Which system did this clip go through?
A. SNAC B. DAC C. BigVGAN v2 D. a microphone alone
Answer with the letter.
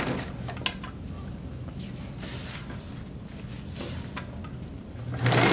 D